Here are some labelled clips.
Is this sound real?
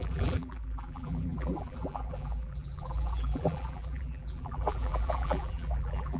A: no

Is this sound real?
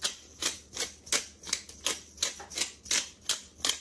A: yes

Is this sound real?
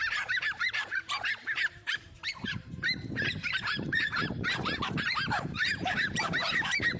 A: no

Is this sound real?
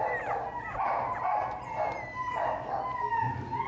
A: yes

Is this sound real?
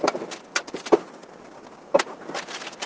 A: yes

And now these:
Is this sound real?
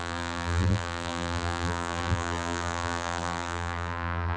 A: no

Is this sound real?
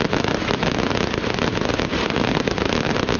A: yes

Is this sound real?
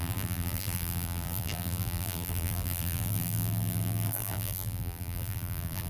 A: no